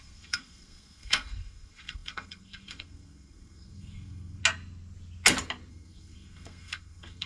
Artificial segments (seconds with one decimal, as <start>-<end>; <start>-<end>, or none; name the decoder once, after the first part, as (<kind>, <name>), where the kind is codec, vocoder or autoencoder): 0.0-4.4 (codec, SNAC); 5.7-7.3